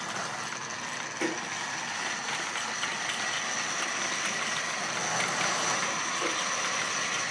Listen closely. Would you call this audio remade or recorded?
recorded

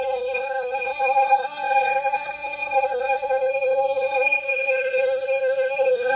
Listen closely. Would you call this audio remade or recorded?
remade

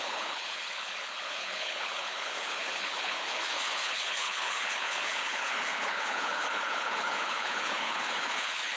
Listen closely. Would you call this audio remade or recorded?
remade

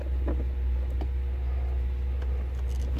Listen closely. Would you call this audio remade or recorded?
recorded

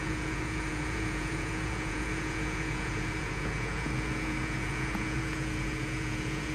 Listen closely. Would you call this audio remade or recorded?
remade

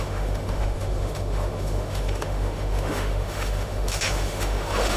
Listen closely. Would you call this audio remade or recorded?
remade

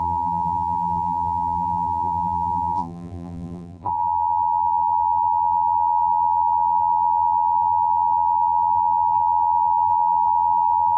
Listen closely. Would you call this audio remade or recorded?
remade